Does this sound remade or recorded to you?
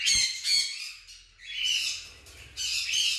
recorded